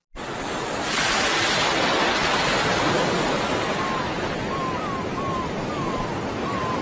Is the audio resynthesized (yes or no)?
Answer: no